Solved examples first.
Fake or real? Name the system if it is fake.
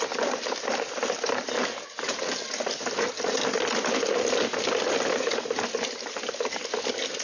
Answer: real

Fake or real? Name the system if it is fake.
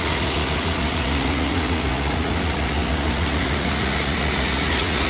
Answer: fake, vocoder, Vocos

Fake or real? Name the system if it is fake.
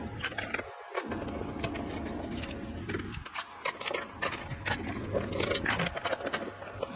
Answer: real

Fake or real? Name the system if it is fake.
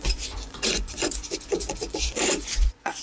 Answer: fake, vocoder, Vocos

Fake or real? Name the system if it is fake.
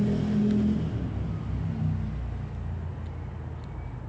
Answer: real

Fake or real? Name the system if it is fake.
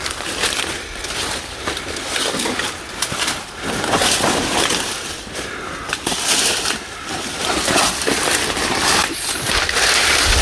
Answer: real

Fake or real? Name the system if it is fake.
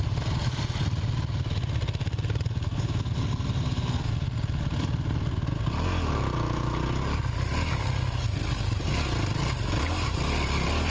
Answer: real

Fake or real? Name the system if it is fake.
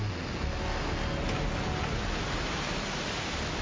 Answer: real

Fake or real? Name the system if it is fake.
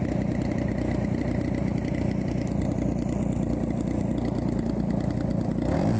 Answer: real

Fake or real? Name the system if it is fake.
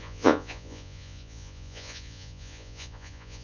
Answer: fake, vocoder, Vocos